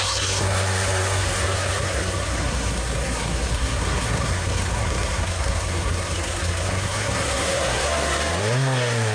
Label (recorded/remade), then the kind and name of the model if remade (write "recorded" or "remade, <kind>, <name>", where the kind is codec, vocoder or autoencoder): remade, codec, SNAC